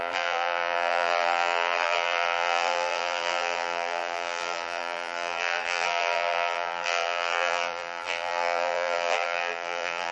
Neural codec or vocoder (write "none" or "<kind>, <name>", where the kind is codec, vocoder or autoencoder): vocoder, BigVGAN v2